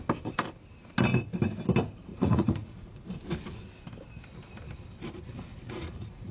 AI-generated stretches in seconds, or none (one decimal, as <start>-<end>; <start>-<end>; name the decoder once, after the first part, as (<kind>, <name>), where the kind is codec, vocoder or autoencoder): 2.1-3.1 (vocoder, Vocos); 5.5-6.3